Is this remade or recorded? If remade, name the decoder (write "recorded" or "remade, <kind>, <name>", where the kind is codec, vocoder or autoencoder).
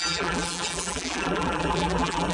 remade, vocoder, BigVGAN v2